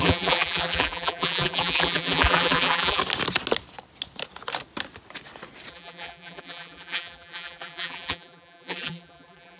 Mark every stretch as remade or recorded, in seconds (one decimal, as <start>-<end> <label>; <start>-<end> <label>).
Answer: 0.0-3.0 remade; 3.0-5.7 recorded; 5.7-9.6 remade